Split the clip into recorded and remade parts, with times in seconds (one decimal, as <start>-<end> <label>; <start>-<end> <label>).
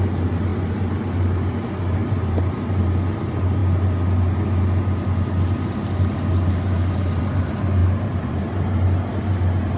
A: 0.0-2.0 recorded; 2.0-2.8 remade; 2.8-7.8 recorded; 7.8-8.5 remade; 8.5-9.8 recorded